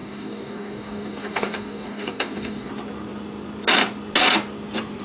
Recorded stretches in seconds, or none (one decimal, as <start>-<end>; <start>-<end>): 2.7-5.0